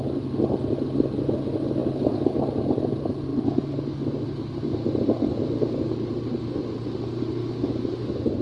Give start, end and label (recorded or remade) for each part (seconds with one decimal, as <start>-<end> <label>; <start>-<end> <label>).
0.0-8.4 recorded